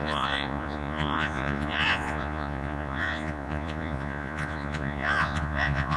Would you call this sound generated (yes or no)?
yes